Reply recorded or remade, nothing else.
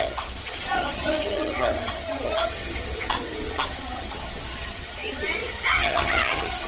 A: remade